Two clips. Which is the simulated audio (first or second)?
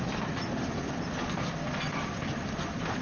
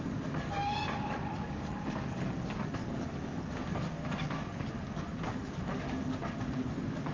second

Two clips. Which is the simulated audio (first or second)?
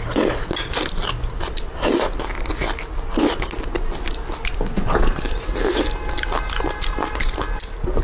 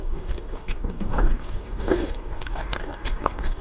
second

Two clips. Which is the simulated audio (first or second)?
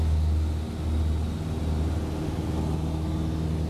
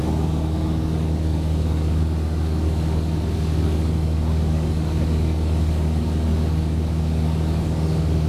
second